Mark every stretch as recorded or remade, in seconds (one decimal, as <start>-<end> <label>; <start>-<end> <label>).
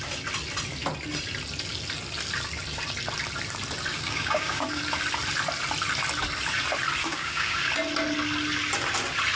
0.0-3.9 recorded; 3.9-4.8 remade; 4.8-7.0 recorded; 7.0-7.7 remade; 7.7-9.4 recorded